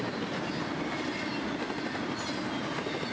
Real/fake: real